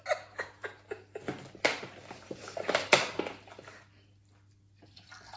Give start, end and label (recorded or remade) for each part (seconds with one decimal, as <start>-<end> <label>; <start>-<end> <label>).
0.0-2.0 recorded; 2.0-5.4 remade